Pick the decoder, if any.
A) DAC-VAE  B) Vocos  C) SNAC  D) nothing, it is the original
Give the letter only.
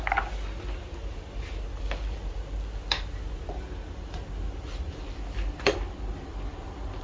D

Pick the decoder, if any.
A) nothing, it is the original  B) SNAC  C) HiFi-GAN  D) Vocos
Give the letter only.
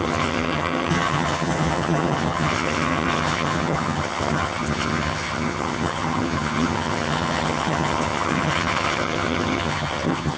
C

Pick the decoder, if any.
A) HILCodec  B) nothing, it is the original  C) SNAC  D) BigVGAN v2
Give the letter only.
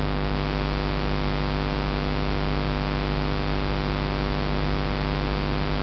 B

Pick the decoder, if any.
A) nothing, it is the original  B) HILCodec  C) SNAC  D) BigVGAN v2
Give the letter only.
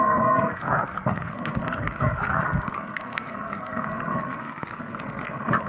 C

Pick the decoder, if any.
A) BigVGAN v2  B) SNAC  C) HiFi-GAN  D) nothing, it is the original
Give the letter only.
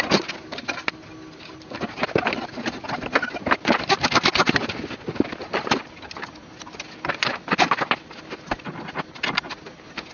D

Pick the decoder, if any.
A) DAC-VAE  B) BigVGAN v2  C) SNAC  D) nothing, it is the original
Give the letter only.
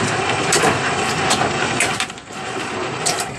B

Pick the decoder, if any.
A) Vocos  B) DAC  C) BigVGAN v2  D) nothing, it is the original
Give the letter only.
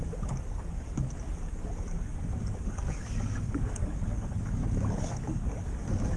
B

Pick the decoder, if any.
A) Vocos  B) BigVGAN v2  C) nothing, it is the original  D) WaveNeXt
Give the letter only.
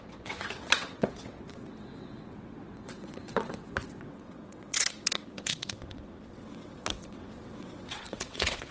D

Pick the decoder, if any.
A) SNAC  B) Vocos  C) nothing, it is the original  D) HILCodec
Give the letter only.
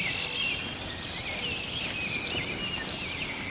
C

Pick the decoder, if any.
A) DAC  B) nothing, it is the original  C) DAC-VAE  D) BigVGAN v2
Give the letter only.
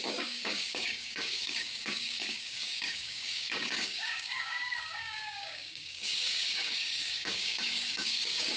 A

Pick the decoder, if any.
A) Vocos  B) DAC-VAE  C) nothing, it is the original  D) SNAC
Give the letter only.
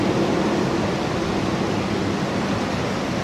C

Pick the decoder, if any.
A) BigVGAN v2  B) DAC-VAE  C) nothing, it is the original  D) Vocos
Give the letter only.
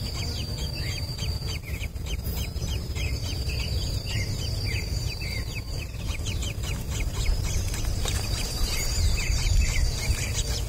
A